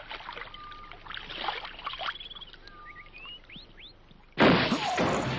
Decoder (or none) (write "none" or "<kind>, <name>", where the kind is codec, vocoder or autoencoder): none